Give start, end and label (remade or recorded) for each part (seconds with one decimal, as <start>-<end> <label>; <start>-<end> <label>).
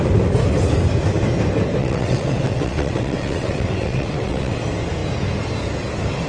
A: 0.0-1.8 recorded; 1.8-4.6 remade; 4.6-6.3 recorded